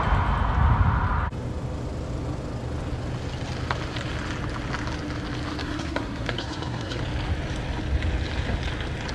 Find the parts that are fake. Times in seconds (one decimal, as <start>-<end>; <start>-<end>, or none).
5.6-7.0